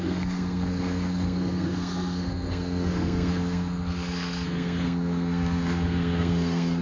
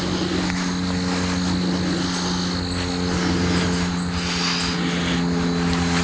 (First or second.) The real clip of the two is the second